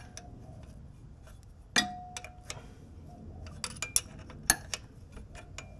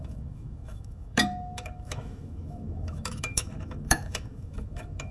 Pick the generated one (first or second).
second